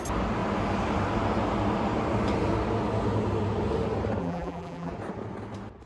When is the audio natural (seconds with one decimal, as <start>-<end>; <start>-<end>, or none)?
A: 0.0-4.2; 4.9-5.9